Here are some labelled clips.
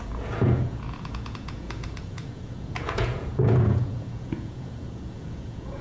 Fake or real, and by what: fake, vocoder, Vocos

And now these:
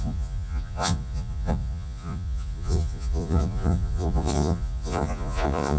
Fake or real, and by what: fake, vocoder, Vocos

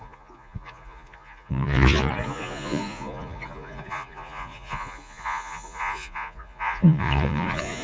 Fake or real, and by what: fake, vocoder, Vocos